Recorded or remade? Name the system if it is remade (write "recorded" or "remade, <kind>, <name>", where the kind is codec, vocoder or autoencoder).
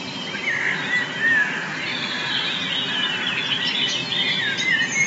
recorded